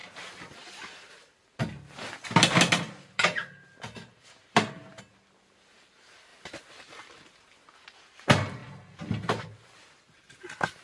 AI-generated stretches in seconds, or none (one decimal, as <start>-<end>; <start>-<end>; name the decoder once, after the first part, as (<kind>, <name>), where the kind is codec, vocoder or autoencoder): none